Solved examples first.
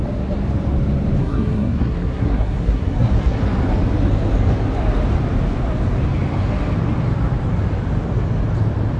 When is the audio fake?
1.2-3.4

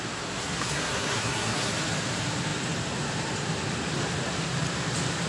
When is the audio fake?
0.4-1.7